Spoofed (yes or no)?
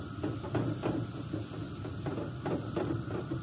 no